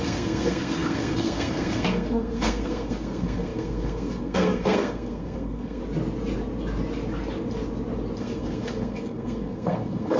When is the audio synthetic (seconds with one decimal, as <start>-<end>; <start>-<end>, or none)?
0.0-5.8; 8.2-10.2